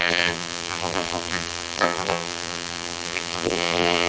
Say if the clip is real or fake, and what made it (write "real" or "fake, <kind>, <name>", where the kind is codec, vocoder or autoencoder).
fake, vocoder, BigVGAN v2